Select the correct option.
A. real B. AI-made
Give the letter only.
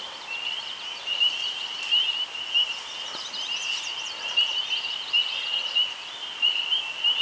A